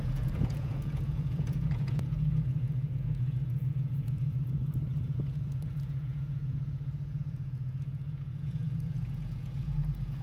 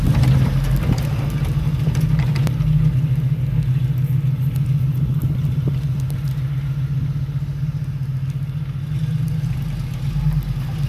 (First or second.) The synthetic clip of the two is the first